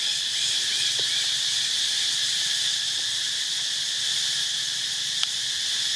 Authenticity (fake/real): fake